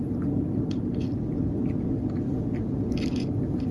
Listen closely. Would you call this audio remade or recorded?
recorded